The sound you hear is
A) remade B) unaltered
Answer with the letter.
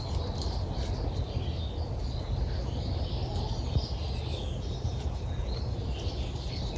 B